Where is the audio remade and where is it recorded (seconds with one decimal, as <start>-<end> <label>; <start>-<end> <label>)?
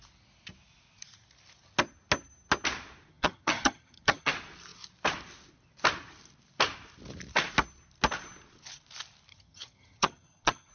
0.0-3.1 recorded; 3.1-4.3 remade; 4.3-9.3 recorded; 9.3-10.7 remade